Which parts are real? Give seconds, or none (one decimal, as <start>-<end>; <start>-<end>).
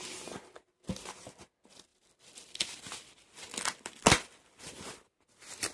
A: 0.0-1.9; 3.0-5.7